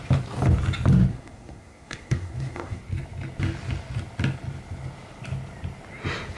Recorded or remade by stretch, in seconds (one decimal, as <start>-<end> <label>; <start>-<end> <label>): 0.0-1.1 recorded; 1.1-2.8 remade; 2.8-6.4 recorded